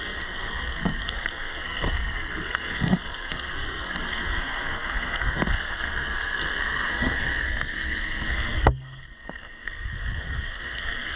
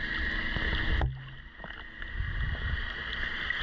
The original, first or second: second